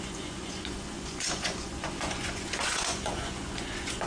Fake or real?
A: fake